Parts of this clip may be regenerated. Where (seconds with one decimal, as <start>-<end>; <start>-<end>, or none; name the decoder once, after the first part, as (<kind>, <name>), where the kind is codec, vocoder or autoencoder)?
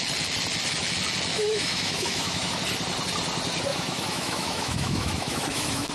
1.3-2.6 (autoencoder, DAC-VAE); 3.7-5.9